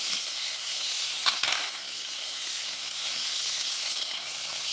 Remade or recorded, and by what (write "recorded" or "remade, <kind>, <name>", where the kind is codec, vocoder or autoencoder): remade, codec, SNAC